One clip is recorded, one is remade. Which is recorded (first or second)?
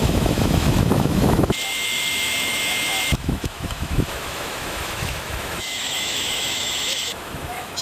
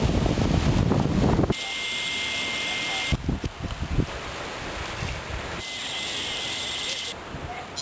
second